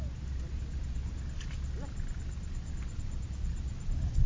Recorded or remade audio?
recorded